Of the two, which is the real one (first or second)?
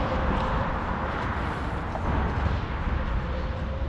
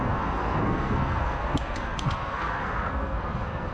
first